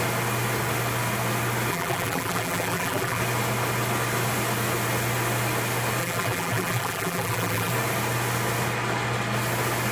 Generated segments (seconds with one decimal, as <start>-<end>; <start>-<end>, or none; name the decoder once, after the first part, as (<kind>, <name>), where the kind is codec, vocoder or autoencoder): 1.7-3.2 (vocoder, BigVGAN v2); 6.0-7.7